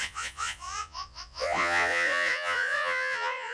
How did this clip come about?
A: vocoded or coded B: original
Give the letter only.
A